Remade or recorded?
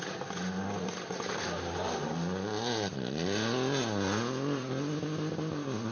recorded